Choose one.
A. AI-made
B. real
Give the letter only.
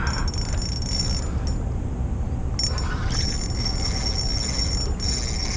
B